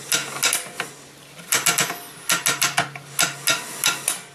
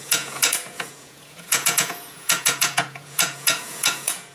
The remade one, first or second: second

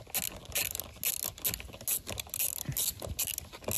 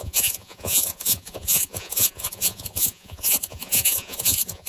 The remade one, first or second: second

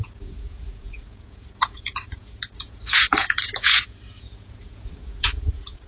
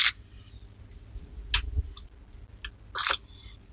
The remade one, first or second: first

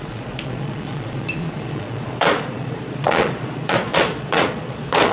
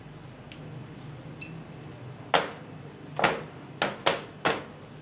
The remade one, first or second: first